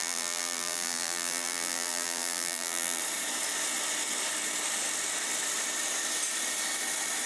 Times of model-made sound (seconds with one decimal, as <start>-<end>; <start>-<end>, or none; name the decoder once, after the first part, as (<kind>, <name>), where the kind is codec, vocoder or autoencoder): 0.0-3.0 (vocoder, BigVGAN v2)